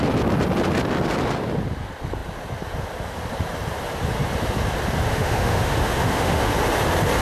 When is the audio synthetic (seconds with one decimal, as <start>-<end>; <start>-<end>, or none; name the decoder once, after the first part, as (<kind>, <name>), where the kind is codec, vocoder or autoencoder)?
5.1-6.5 (autoencoder, DAC-VAE)